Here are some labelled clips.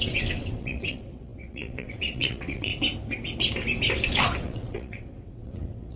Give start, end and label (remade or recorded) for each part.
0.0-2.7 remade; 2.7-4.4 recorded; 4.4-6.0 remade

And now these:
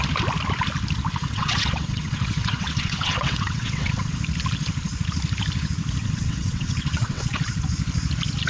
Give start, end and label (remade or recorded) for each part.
0.0-1.2 recorded; 1.2-4.2 remade; 4.2-6.0 recorded; 6.0-7.4 remade; 7.4-8.5 recorded